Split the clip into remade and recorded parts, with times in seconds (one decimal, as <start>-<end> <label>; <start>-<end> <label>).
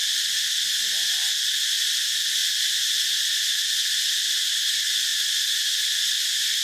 0.0-5.1 recorded; 5.1-5.7 remade; 5.7-6.6 recorded